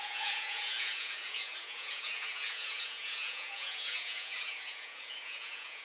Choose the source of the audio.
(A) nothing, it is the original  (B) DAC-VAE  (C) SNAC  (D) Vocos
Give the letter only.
D